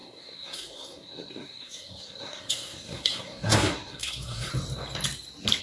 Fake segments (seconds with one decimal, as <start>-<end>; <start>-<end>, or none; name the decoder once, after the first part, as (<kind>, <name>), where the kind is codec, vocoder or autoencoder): 0.0-4.5 (codec, SNAC)